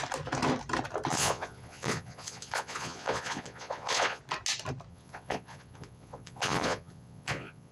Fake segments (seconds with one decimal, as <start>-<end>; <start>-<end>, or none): 1.1-4.2; 4.9-7.7